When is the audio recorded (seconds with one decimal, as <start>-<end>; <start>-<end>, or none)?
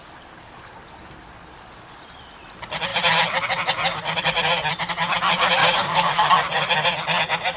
0.0-5.6; 6.3-7.6